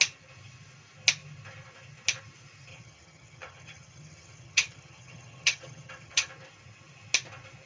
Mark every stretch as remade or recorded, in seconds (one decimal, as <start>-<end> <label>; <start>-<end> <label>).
0.0-2.7 recorded; 2.7-6.3 remade; 6.3-7.7 recorded